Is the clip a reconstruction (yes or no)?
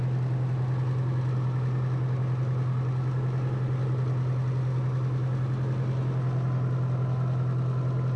no